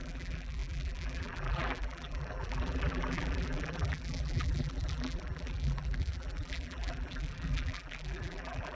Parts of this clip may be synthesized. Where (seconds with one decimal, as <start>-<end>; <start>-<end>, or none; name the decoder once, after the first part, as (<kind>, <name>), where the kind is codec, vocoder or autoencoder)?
0.0-8.7 (vocoder, BigVGAN v2)